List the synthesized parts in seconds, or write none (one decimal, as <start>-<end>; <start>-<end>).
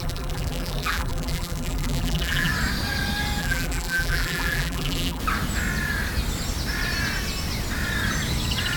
0.0-2.5; 3.4-5.2